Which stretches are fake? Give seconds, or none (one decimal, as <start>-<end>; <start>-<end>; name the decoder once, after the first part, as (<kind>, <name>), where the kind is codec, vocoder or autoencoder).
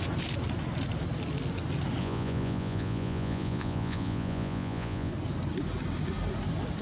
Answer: 2.0-5.1 (vocoder, Vocos)